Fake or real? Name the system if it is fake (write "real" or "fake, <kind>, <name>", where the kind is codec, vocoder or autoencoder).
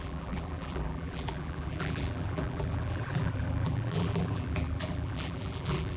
fake, vocoder, BigVGAN v2